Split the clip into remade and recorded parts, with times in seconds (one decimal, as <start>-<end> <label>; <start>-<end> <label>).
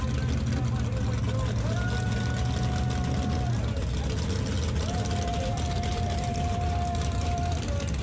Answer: 0.0-5.3 recorded; 5.3-8.0 remade